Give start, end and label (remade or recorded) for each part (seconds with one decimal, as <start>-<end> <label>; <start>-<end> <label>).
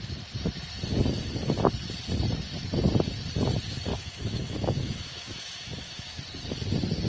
0.0-3.9 recorded; 3.9-6.2 remade; 6.2-7.1 recorded